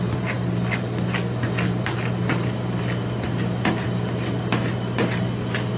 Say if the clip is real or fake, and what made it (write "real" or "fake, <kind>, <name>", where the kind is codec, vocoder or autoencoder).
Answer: real